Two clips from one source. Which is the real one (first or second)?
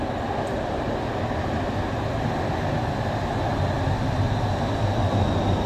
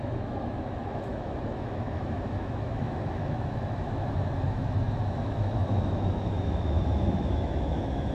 first